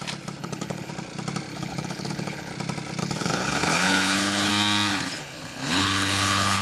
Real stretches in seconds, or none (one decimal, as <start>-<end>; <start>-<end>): 0.0-0.4; 0.9-1.5; 2.5-3.0; 4.5-4.9